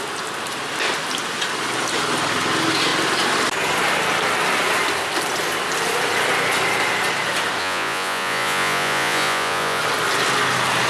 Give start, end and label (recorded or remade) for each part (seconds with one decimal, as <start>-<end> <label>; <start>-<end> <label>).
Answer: 0.0-7.6 recorded; 7.6-9.8 remade; 9.8-10.9 recorded